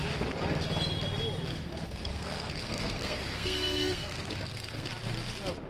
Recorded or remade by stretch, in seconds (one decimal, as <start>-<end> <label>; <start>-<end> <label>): 0.0-1.5 recorded; 1.5-4.9 remade; 4.9-5.7 recorded

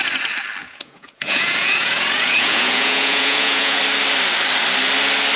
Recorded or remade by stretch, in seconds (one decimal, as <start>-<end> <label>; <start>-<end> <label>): 0.0-0.6 recorded; 0.6-3.8 remade; 3.8-5.4 recorded